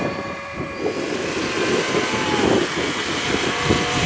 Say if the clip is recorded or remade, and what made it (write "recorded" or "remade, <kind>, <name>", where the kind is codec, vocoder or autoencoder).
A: remade, vocoder, BigVGAN v2